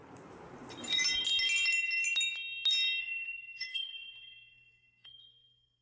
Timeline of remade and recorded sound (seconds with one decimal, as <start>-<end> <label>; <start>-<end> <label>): 0.0-3.0 recorded; 3.0-5.8 remade